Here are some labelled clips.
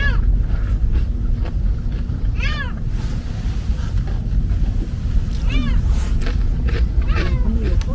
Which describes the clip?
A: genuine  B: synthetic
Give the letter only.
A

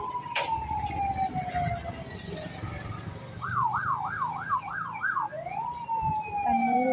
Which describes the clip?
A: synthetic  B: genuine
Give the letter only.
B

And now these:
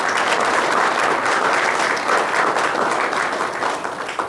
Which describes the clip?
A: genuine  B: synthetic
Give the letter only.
B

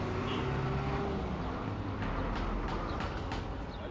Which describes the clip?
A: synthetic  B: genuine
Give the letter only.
B